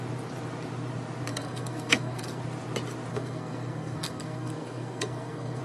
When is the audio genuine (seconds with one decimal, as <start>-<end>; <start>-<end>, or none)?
0.0-1.3; 2.4-3.1